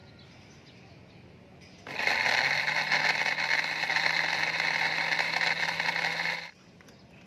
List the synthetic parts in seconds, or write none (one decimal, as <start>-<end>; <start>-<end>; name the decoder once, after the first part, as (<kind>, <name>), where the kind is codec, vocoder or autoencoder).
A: none